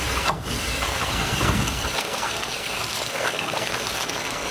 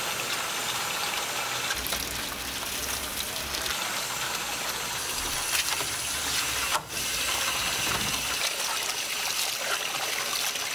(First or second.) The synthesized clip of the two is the first